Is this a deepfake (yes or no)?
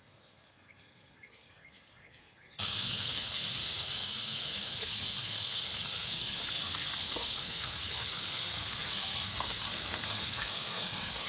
yes